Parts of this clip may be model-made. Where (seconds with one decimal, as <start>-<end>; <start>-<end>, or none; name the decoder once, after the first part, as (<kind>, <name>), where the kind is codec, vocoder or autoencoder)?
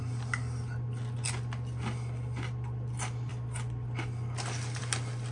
none